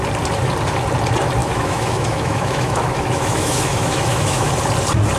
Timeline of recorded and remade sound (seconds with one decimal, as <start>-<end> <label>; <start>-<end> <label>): 0.0-1.4 recorded; 1.4-4.5 remade; 4.5-5.2 recorded